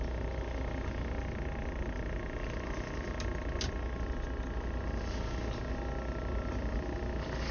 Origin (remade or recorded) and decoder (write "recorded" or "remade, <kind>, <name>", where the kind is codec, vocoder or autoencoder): recorded